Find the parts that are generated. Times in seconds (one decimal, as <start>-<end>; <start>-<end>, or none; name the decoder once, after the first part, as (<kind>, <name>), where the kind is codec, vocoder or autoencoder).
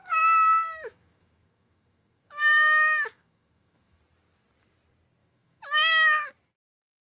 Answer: 0.0-4.0 (autoencoder, DAC-VAE); 5.2-5.9